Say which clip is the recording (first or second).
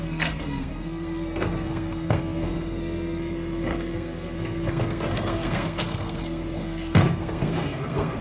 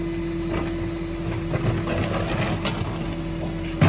second